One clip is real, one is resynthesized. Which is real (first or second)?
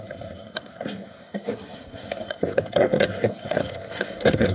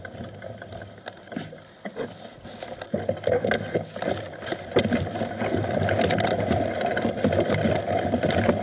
second